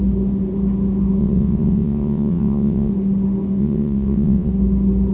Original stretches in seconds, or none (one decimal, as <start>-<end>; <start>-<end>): 0.0-1.2; 2.9-3.6; 4.5-5.1